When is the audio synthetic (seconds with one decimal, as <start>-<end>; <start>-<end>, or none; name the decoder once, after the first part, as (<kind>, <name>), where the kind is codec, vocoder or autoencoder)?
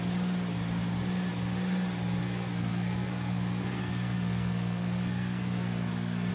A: 2.2-6.3 (codec, SNAC)